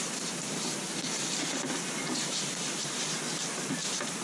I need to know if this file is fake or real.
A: real